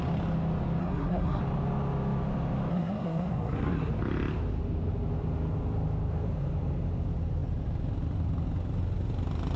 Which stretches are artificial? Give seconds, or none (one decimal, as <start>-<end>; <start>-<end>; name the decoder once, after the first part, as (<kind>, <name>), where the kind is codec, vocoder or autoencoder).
0.8-1.4 (codec, SNAC); 2.7-3.9